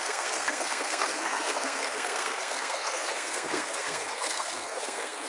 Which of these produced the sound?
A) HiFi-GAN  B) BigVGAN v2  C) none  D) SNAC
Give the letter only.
D